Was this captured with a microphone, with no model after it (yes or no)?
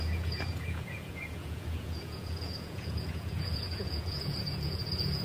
no